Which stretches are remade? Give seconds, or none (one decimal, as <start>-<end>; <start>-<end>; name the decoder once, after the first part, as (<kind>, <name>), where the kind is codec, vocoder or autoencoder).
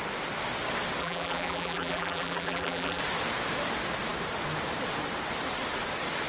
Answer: 1.0-3.0 (vocoder, BigVGAN v2)